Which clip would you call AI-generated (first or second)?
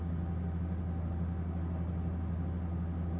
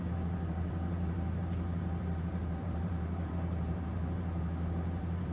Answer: second